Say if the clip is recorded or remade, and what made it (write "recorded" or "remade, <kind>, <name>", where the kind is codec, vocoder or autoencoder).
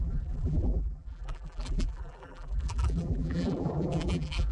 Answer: remade, vocoder, BigVGAN v2